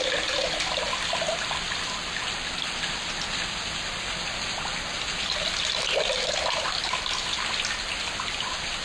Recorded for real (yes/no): yes